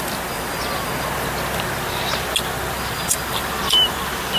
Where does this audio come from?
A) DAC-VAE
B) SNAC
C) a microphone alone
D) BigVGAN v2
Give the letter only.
C